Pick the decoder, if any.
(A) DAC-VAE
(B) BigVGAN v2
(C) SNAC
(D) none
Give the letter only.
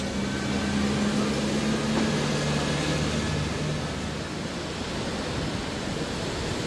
D